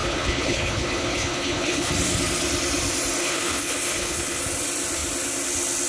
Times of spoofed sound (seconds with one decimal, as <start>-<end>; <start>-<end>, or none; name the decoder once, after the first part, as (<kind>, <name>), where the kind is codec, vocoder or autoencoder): 0.0-1.9 (codec, HILCodec); 3.2-4.4